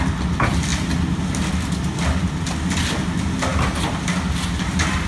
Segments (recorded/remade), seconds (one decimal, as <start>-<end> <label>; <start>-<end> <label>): 0.0-5.1 recorded